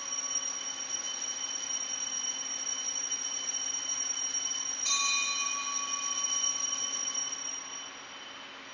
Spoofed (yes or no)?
no